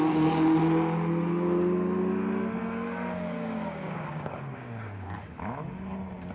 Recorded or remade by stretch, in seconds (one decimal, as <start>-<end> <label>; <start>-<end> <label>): 0.0-2.6 recorded; 2.6-5.2 remade; 5.2-6.3 recorded